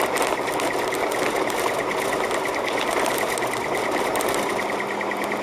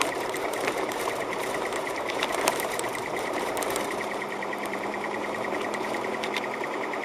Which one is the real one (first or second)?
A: first